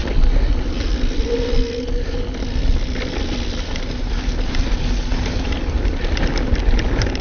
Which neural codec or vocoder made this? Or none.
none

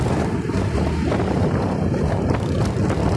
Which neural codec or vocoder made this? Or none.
none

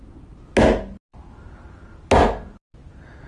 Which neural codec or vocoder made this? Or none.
none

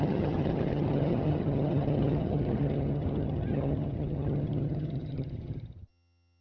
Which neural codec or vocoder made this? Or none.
vocoder, HiFi-GAN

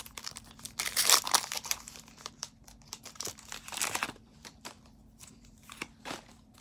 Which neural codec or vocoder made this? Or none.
vocoder, BigVGAN v2